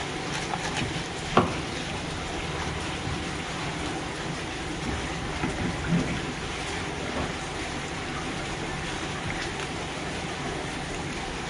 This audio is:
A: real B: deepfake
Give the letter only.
A